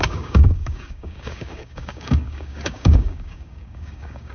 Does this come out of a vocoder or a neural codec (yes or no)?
yes